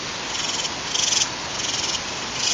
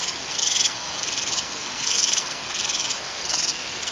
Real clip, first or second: first